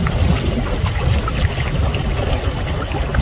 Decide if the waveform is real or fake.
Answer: real